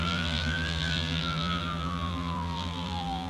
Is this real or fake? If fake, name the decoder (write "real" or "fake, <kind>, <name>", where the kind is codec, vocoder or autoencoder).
fake, vocoder, BigVGAN v2